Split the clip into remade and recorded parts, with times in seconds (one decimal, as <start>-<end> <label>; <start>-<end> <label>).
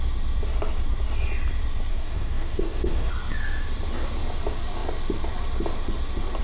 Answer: 0.0-1.9 recorded; 1.9-3.1 remade; 3.1-6.4 recorded